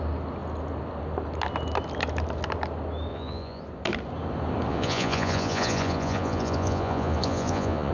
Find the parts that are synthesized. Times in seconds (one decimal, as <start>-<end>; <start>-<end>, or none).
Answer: 3.1-3.6; 4.7-7.9